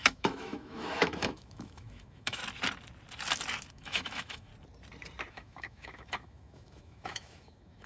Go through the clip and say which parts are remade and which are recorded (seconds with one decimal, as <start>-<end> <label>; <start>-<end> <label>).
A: 0.0-2.4 remade; 2.4-3.7 recorded; 3.7-4.5 remade; 4.5-5.3 recorded; 5.3-7.9 remade